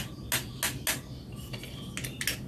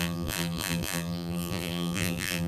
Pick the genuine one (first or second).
first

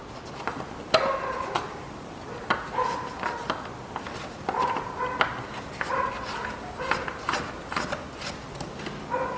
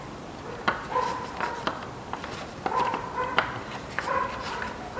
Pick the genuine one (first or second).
first